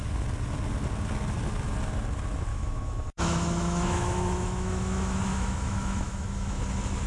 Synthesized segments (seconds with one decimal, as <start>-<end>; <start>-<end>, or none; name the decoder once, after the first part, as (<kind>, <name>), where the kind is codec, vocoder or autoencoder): 2.5-6.6 (autoencoder, DAC-VAE)